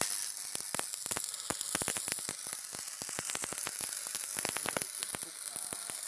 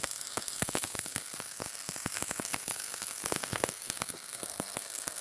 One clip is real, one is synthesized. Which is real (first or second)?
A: first